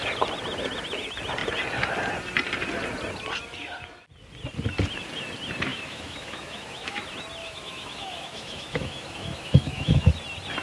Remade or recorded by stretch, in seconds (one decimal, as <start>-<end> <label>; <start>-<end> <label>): 0.0-5.7 recorded; 5.7-7.0 remade; 7.0-7.4 recorded; 7.4-10.1 remade; 10.1-10.6 recorded